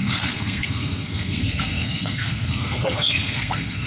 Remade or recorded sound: remade